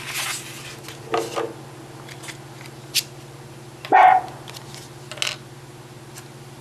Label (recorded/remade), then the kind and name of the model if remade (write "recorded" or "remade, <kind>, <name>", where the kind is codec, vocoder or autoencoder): recorded